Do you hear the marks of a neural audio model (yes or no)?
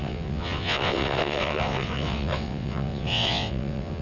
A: yes